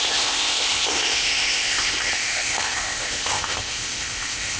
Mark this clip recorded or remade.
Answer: remade